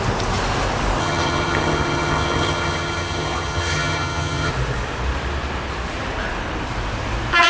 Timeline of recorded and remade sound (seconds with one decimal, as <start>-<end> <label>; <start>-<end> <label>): 0.0-1.0 recorded; 1.0-4.5 remade; 4.5-7.5 recorded